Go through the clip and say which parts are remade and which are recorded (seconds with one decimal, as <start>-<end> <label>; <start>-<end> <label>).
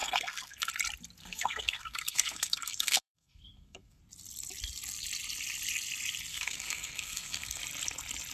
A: 0.0-0.7 remade; 0.7-1.2 recorded; 1.2-4.0 remade; 4.0-6.3 recorded; 6.3-7.6 remade; 7.6-8.3 recorded